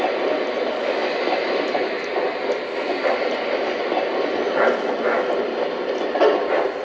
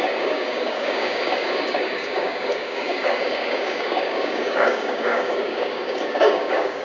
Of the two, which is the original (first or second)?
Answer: first